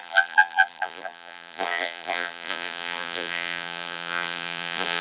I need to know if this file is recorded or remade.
remade